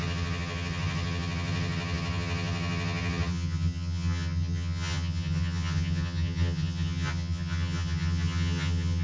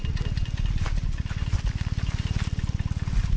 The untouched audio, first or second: second